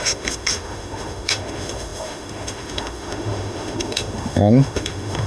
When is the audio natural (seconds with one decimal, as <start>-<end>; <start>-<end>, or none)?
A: none